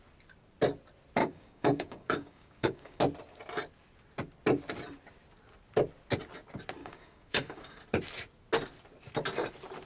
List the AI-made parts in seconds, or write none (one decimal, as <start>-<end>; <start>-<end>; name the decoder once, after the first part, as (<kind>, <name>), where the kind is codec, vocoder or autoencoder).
1.2-3.0 (codec, DAC); 6.8-7.8